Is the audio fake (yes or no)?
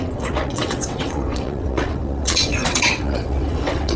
yes